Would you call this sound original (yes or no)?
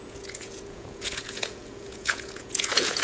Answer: no